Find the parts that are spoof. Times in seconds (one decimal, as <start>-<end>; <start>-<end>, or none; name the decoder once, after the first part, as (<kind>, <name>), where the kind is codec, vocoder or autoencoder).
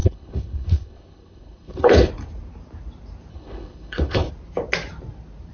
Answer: 0.0-2.1 (codec, HILCodec); 3.3-4.3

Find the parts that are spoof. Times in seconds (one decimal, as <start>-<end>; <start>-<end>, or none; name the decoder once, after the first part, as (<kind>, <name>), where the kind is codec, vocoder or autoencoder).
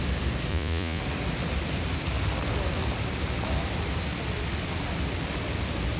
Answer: 0.5-1.0 (vocoder, Vocos)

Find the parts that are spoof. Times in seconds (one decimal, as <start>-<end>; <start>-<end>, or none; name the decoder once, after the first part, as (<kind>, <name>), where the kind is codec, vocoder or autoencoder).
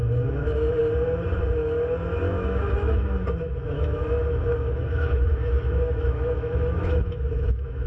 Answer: 0.0-0.8 (autoencoder, DAC-VAE); 2.3-7.9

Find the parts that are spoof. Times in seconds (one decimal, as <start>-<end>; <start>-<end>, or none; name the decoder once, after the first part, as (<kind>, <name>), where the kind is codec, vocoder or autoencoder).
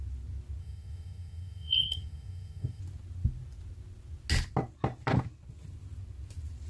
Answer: 0.6-2.8 (codec, SNAC)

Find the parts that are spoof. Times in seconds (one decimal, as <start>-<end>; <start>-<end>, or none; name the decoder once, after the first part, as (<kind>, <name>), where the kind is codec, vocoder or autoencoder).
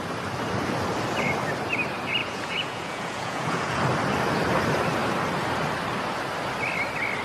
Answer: 2.2-3.8 (vocoder, Vocos)